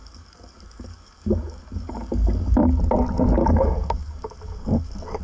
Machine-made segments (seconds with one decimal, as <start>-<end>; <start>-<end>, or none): 0.0-2.8; 3.4-5.2